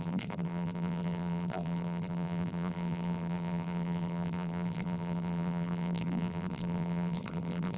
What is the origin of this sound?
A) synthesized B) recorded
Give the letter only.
A